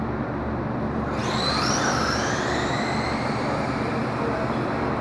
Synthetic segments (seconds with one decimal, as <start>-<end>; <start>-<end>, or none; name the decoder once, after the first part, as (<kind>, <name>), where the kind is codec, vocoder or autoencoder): none